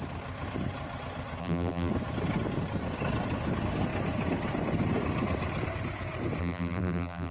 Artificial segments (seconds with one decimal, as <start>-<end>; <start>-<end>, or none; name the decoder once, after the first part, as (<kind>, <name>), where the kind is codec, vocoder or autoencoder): 1.4-1.9 (vocoder, BigVGAN v2); 6.4-7.3